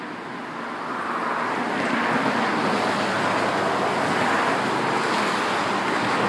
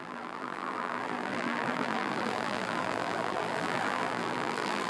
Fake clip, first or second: second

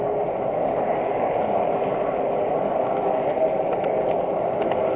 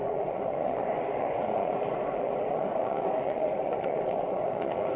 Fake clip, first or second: second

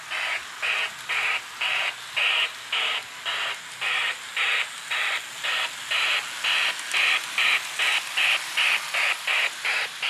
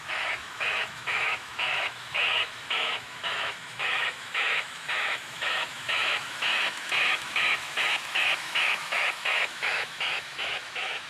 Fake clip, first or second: second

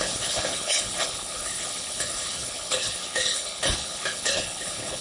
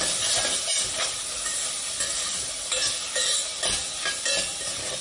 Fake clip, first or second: first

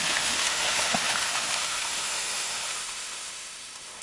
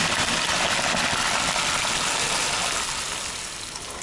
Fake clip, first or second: first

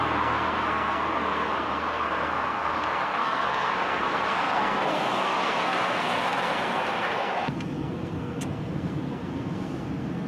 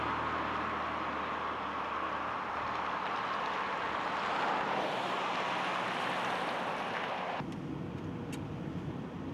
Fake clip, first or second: first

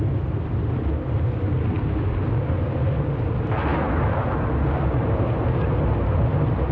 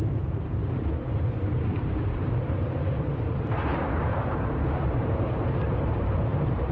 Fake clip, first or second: second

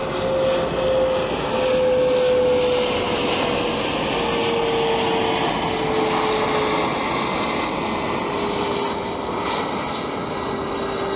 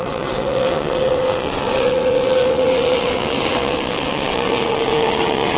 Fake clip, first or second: second